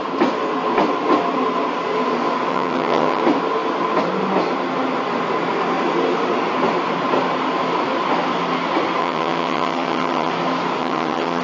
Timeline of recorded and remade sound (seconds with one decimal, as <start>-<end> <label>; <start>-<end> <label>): 0.0-2.5 recorded; 2.5-3.2 remade; 3.2-9.0 recorded; 9.0-10.3 remade; 10.3-10.8 recorded; 10.8-11.4 remade